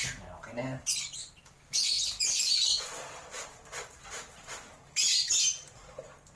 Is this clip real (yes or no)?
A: no